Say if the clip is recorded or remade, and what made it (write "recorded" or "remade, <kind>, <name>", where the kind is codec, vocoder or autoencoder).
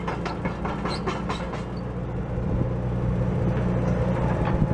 recorded